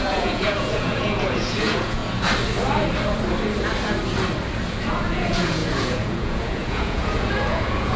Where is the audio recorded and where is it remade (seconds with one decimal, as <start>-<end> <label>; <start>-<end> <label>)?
0.0-2.0 remade; 2.0-4.9 recorded; 4.9-8.0 remade